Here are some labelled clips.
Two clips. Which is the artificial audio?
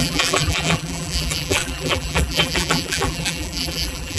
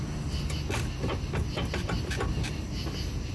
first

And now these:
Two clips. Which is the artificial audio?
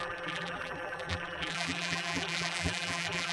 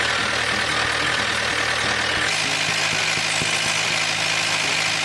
first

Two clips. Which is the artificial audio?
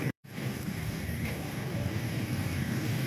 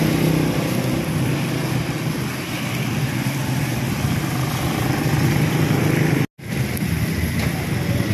first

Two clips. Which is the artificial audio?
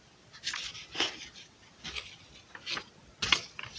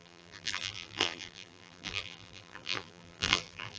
second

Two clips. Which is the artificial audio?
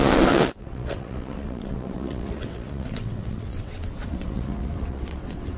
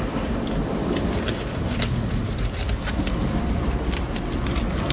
first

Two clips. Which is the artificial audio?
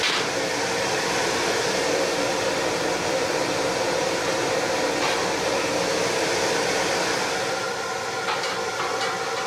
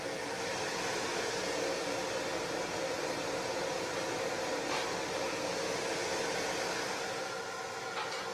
first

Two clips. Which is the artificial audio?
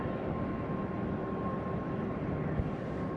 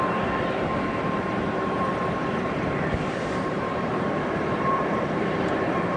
second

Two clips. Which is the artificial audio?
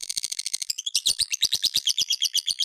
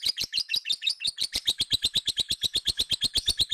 first